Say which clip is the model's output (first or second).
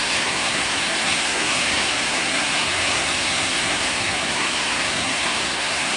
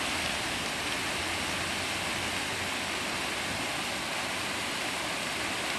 first